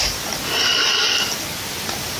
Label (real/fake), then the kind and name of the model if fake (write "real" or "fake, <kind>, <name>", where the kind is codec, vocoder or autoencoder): real